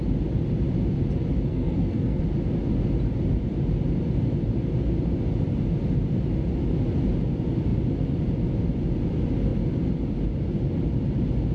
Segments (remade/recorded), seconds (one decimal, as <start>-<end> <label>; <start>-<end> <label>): 0.0-1.5 recorded; 1.5-2.2 remade; 2.2-11.5 recorded